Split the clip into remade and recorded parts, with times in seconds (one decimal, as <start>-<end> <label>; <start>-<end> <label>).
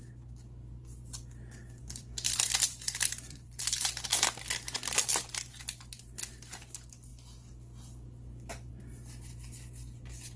0.0-1.8 recorded; 1.8-3.6 remade; 3.6-10.4 recorded